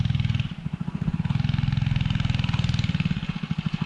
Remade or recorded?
recorded